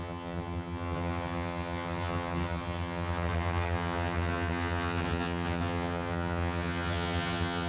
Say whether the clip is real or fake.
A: fake